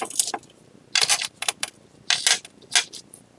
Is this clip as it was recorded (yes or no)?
yes